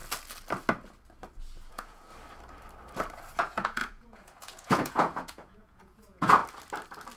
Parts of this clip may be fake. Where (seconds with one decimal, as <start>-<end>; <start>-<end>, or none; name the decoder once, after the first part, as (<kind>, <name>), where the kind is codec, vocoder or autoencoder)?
1.7-2.1 (vocoder, Vocos); 3.4-6.4